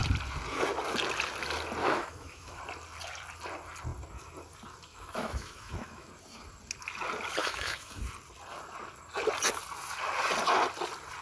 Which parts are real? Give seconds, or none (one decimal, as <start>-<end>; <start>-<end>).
0.0-1.8; 2.6-4.9; 6.1-7.4; 8.0-11.2